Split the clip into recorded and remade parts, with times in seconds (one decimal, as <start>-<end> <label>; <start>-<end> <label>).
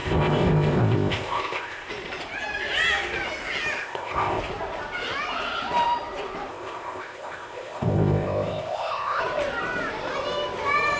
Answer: 0.0-1.9 remade; 1.9-3.8 recorded; 3.8-4.4 remade; 4.4-6.5 recorded; 6.5-9.2 remade; 9.2-11.0 recorded